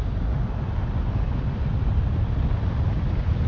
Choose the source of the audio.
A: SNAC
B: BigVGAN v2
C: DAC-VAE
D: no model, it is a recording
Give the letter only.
D